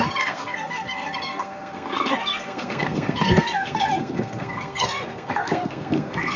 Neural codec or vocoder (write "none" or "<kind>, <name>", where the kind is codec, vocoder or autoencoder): codec, SNAC